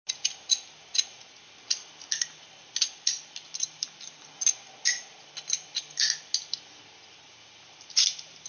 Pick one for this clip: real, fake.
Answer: real